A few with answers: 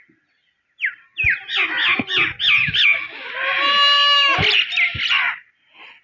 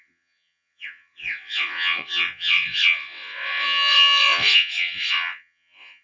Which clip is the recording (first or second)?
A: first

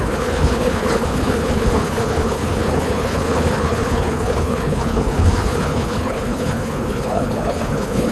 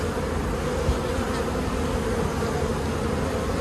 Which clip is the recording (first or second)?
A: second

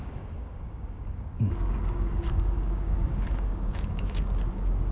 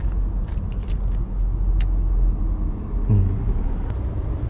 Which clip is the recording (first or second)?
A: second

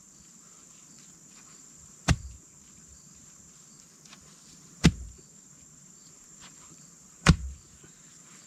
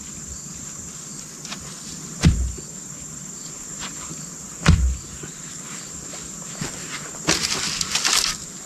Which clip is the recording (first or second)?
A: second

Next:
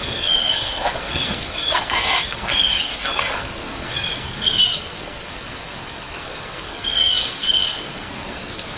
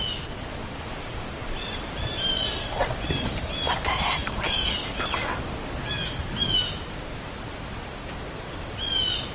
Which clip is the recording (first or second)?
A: second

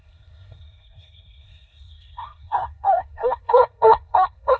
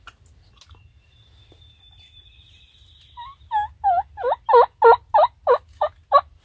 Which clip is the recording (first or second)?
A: second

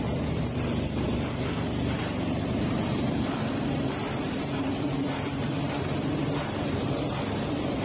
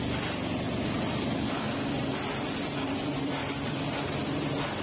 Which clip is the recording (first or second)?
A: second